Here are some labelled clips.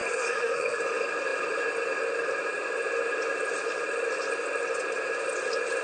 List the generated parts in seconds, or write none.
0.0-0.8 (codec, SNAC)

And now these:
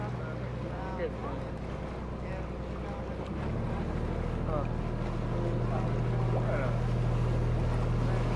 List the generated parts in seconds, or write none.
none

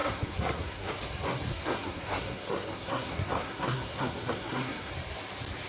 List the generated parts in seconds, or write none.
0.0-0.9 (codec, SNAC); 1.5-4.9

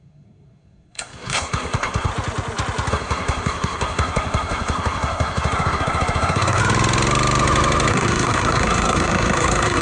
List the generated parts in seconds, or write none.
0.0-2.1 (codec, SNAC); 2.9-6.6; 7.9-9.8

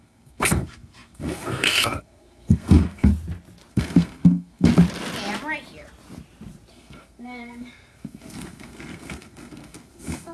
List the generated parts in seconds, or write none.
0.0-3.1 (codec, SNAC); 3.7-4.7; 6.7-10.3

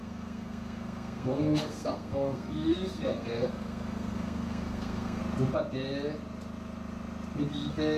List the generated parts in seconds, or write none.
0.0-5.2 (codec, SNAC); 7.5-8.0